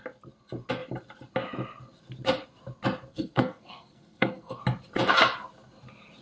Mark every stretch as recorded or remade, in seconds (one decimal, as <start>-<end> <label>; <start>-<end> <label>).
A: 0.0-3.1 recorded; 3.1-4.6 remade; 4.6-6.2 recorded